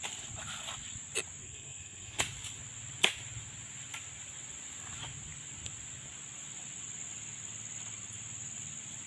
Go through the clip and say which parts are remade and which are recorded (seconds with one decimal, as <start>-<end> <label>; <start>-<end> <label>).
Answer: 0.0-1.4 recorded; 1.4-2.2 remade; 2.2-9.1 recorded